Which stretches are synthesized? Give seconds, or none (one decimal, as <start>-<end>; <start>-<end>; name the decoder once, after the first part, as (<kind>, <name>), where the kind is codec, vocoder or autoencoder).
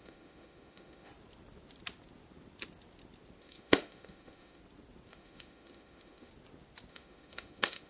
0.0-1.1 (autoencoder, DAC-VAE); 3.4-4.6; 5.1-6.3; 6.9-7.9